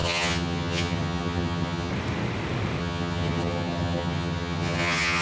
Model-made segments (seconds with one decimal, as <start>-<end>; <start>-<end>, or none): 0.0-1.9; 2.8-5.2

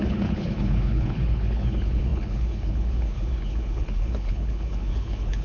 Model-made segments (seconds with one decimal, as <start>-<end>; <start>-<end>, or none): 0.0-5.4

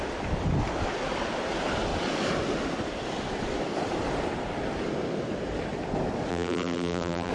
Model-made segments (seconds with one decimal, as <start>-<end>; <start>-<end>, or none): 6.3-7.3

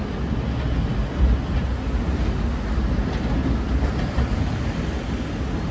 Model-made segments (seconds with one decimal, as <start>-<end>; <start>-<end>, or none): none

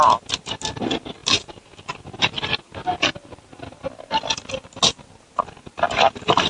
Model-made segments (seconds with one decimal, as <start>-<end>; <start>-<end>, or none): none

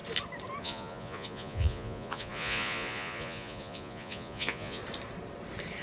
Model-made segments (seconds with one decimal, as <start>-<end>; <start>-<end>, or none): 0.6-4.8

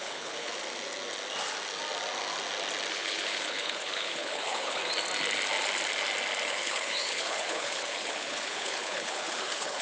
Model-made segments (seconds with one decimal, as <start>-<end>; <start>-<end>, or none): 0.0-0.5; 2.9-4.8; 6.5-9.8

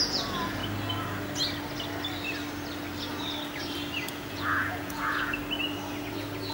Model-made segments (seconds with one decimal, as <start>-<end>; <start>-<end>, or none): 0.0-0.6; 4.1-5.4